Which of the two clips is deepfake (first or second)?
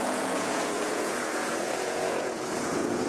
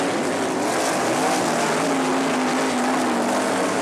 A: first